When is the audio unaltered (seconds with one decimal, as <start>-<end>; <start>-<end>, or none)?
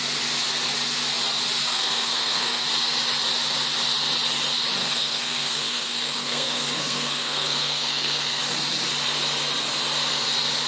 0.0-1.7; 2.6-4.8; 8.4-10.7